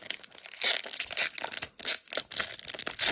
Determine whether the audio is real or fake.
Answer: real